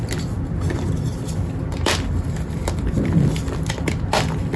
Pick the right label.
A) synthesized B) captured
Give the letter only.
A